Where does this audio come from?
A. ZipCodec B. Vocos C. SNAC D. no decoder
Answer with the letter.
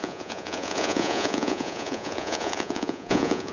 B